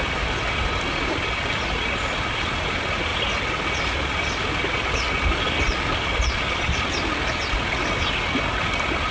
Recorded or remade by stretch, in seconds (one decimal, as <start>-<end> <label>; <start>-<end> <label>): 0.0-9.1 recorded